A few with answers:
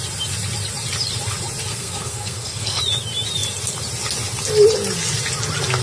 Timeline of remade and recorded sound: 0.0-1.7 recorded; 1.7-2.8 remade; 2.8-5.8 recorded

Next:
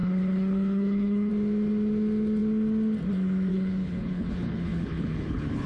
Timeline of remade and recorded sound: 0.0-1.3 remade; 1.3-3.5 recorded; 3.5-5.7 remade

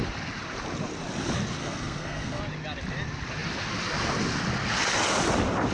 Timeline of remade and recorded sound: 0.0-1.6 recorded; 1.6-2.4 remade; 2.4-5.7 recorded

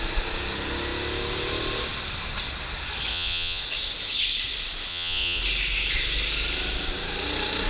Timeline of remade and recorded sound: 0.0-3.1 recorded; 3.1-3.6 remade; 3.6-4.9 recorded; 4.9-5.4 remade; 5.4-7.7 recorded

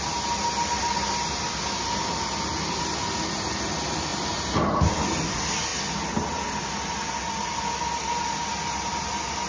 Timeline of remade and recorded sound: 0.0-9.5 recorded

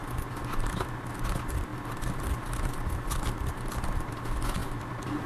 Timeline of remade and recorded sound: 0.0-5.3 recorded

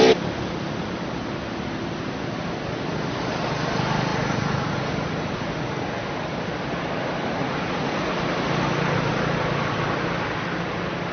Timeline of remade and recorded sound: 0.0-4.1 recorded; 4.1-6.0 remade; 6.0-7.4 recorded; 7.4-8.1 remade; 8.1-11.1 recorded